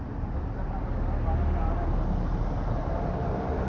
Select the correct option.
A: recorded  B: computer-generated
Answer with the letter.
A